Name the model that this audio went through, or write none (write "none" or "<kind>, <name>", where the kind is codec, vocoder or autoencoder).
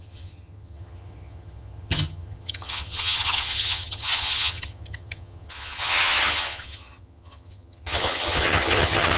vocoder, HiFi-GAN